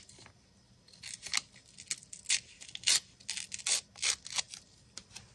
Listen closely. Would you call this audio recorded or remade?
recorded